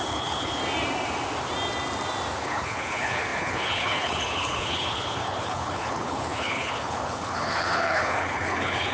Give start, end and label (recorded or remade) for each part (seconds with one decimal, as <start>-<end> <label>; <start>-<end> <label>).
0.0-0.6 remade; 0.6-2.4 recorded; 2.4-8.9 remade